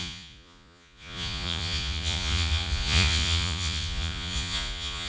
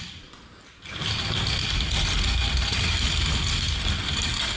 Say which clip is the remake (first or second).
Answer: first